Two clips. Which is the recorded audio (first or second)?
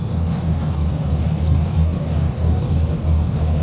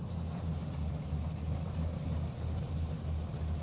second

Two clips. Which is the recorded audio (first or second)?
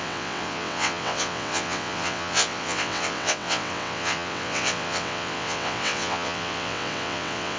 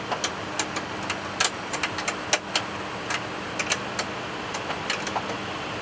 second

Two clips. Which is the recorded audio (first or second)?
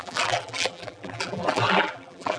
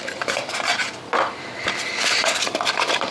second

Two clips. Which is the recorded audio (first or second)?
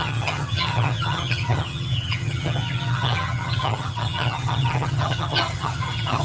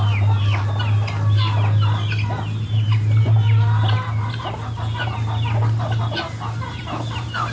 second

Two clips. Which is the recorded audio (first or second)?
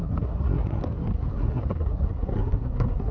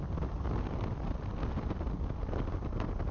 second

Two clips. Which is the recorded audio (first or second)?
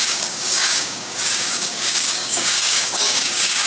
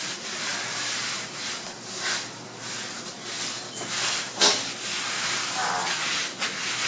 second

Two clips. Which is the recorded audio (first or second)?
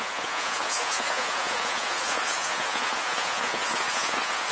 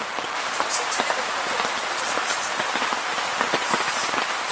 second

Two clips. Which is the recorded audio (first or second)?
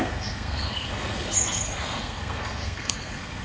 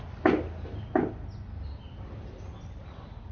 second